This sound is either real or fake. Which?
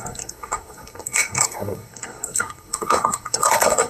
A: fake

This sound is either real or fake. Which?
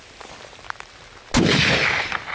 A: real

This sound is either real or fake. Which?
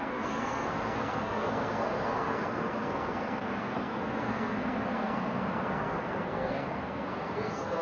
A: fake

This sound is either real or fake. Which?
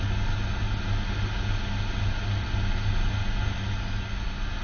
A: real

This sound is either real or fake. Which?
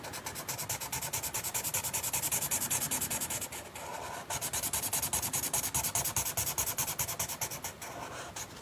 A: real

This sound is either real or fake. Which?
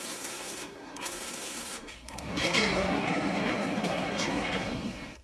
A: fake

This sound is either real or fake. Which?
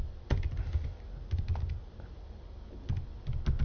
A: real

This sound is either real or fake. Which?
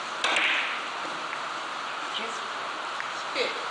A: real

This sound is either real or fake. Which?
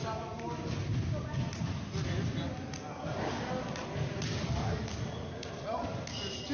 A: real